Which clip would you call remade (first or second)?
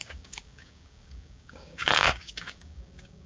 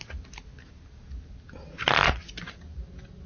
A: first